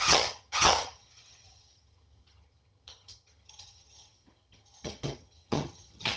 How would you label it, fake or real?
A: fake